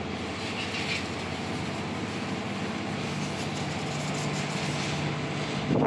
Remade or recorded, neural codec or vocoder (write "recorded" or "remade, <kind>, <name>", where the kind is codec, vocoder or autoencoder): recorded